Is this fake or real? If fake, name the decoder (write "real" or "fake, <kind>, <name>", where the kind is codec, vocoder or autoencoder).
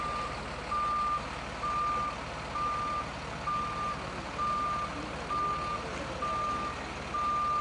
real